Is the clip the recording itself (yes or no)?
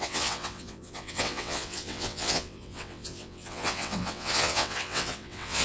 no